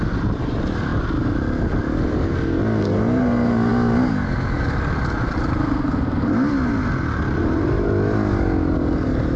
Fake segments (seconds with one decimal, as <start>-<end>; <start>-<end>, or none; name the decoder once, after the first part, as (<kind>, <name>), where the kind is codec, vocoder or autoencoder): 5.6-6.3 (codec, SNAC)